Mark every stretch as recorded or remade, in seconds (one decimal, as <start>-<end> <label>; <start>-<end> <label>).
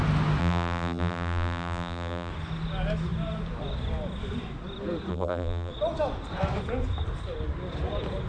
0.0-0.4 recorded; 0.4-2.3 remade; 2.3-5.1 recorded; 5.1-5.7 remade; 5.7-8.3 recorded